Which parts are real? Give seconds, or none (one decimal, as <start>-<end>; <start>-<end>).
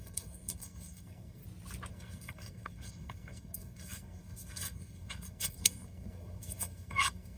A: 1.4-1.9